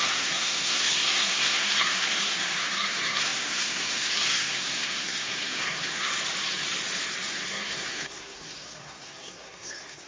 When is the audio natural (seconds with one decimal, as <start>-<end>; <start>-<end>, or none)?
6.1-7.3